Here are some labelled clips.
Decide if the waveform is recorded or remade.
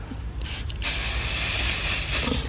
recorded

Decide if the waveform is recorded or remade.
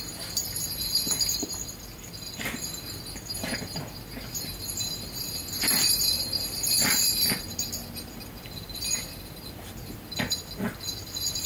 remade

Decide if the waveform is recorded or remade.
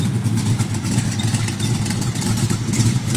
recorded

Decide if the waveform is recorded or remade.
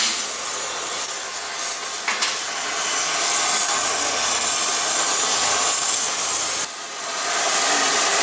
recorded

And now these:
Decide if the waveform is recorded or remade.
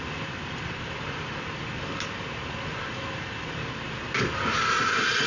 recorded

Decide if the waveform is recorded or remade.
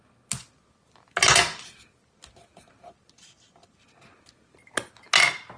recorded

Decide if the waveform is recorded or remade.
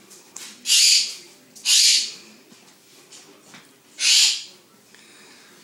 recorded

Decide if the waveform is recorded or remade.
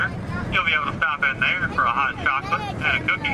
recorded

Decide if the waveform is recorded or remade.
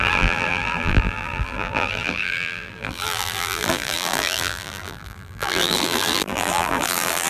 remade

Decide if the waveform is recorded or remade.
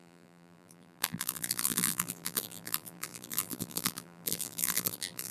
remade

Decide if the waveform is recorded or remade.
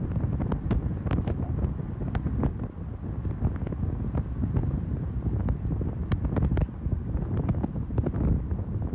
recorded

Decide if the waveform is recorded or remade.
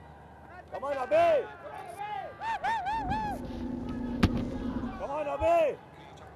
recorded